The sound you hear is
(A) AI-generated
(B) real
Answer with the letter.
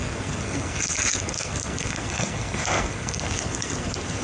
A